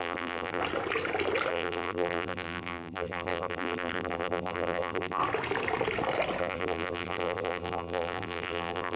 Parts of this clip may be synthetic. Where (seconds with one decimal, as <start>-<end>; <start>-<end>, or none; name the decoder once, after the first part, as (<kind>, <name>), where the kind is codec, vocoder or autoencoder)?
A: 0.0-0.6 (vocoder, BigVGAN v2); 1.5-5.2; 6.4-9.0